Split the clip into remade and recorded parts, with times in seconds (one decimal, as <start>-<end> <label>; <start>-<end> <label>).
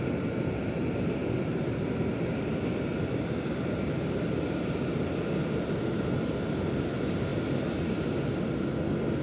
0.0-9.2 recorded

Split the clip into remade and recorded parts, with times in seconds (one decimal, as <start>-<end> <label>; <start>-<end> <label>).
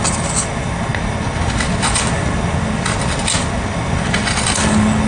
0.0-5.1 recorded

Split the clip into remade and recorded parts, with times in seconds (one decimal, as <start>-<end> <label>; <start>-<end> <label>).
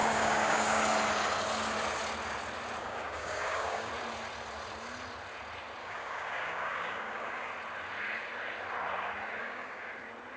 0.0-0.8 remade; 0.8-2.8 recorded; 2.8-3.9 remade; 3.9-5.8 recorded; 5.8-7.5 remade; 7.5-9.4 recorded; 9.4-9.9 remade; 9.9-10.4 recorded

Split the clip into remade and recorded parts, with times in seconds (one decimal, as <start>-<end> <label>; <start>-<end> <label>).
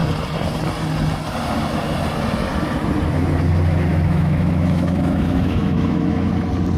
0.0-3.9 recorded; 3.9-6.3 remade; 6.3-6.8 recorded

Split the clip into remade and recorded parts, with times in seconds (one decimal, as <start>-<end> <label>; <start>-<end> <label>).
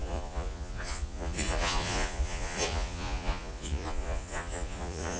0.0-5.2 remade